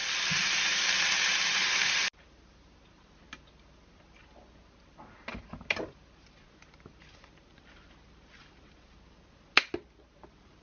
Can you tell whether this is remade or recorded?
recorded